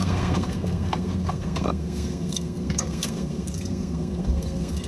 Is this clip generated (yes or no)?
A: yes